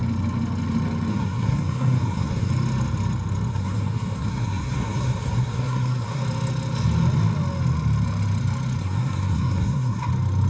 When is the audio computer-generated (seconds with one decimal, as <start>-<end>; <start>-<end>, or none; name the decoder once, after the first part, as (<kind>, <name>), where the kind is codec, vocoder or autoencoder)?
1.1-2.5 (codec, SNAC); 3.5-6.2; 8.8-10.1